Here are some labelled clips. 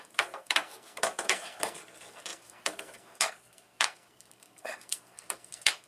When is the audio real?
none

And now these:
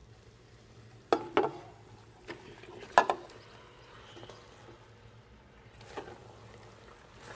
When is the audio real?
0.0-7.4

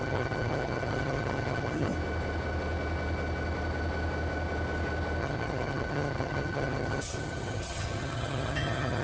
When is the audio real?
1.9-5.2

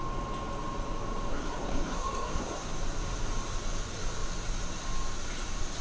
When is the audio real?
0.0-1.3; 2.7-5.8